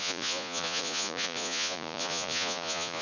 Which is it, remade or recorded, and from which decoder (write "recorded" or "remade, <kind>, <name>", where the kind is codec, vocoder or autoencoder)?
remade, vocoder, Vocos